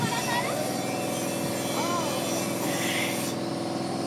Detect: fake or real real